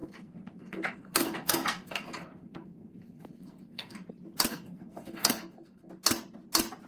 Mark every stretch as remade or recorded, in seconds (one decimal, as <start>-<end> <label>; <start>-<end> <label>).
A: 0.0-4.1 remade; 4.1-4.5 recorded; 4.5-5.9 remade; 5.9-6.9 recorded